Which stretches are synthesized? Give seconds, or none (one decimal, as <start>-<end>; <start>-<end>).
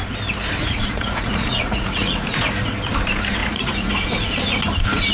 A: 0.6-2.4; 3.4-3.9